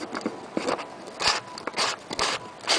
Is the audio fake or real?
real